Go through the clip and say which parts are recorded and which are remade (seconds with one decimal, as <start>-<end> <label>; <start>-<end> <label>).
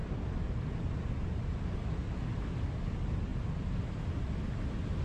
0.0-5.0 recorded